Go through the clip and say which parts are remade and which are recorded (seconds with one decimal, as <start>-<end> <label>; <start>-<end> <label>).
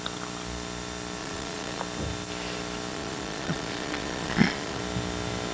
0.0-1.2 recorded; 1.2-1.8 remade; 1.8-2.9 recorded; 2.9-4.8 remade; 4.8-5.5 recorded